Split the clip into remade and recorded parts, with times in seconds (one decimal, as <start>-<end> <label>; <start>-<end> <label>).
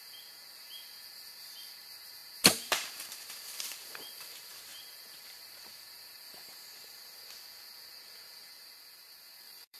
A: 0.0-7.2 remade; 7.2-7.9 recorded; 7.9-9.8 remade